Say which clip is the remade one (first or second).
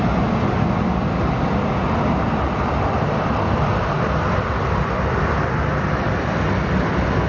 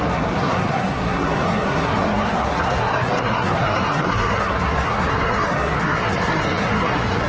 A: second